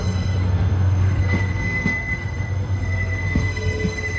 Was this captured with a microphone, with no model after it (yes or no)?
no